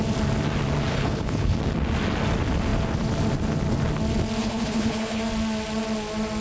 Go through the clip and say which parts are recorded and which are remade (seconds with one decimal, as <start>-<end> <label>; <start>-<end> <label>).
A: 0.0-0.9 recorded; 0.9-1.6 remade; 1.6-4.4 recorded; 4.4-5.2 remade; 5.2-6.4 recorded